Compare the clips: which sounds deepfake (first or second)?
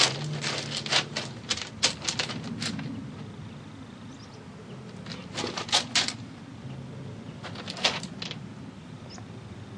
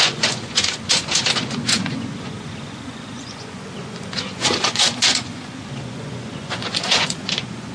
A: second